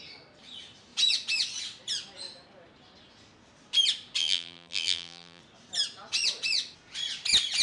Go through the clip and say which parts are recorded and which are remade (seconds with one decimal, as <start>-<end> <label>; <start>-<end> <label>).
0.0-4.2 recorded; 4.2-5.4 remade; 5.4-7.6 recorded